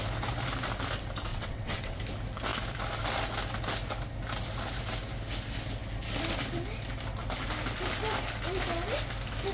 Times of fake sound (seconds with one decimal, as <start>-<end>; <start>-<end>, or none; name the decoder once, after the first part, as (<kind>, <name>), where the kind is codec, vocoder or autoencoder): 1.3-2.0 (vocoder, WaveNeXt)